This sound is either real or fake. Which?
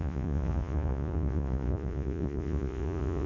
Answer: fake